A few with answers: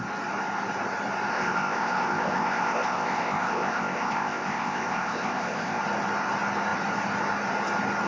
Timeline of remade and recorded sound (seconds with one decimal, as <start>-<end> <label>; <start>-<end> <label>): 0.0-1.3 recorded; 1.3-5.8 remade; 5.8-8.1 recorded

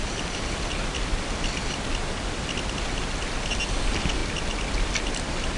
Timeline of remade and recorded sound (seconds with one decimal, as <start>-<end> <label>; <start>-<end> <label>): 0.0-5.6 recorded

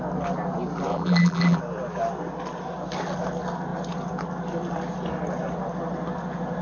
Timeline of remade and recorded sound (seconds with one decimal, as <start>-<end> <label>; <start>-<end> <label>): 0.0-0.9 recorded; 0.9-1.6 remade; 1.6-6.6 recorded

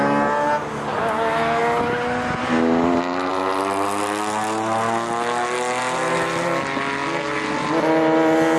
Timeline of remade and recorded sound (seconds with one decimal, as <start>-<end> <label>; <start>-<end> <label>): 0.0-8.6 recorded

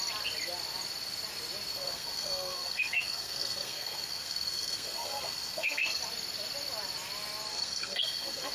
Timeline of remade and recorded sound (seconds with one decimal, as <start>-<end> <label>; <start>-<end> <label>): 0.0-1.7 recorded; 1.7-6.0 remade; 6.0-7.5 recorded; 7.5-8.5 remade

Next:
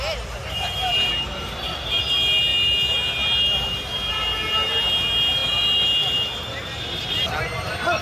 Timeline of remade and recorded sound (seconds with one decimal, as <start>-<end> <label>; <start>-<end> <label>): 0.0-0.4 recorded; 0.4-2.0 remade; 2.0-8.0 recorded

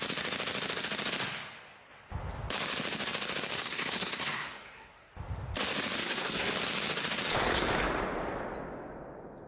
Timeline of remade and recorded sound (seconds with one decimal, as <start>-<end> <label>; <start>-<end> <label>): 0.0-3.5 recorded; 3.5-5.1 remade; 5.1-6.0 recorded; 6.0-6.5 remade; 6.5-9.5 recorded

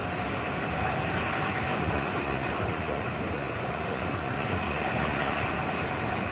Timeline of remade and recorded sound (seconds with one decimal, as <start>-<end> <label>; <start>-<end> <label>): 0.0-1.7 recorded; 1.7-5.5 remade; 5.5-6.3 recorded